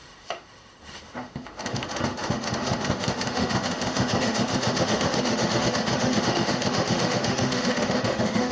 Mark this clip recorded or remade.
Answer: remade